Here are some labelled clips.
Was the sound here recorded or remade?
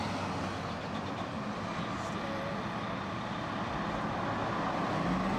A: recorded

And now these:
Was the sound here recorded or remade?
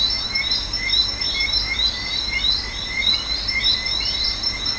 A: remade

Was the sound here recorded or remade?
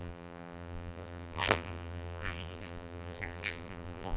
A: remade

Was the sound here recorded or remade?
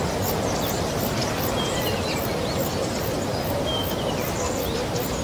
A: recorded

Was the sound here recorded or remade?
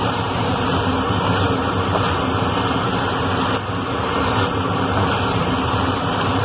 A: remade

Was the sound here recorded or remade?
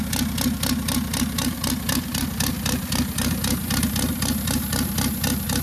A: recorded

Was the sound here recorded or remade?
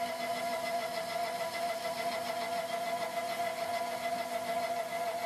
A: recorded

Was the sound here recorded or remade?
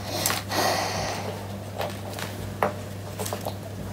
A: recorded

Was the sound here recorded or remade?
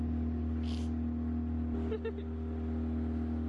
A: recorded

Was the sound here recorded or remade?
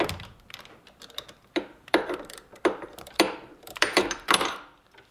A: remade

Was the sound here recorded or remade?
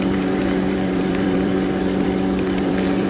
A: remade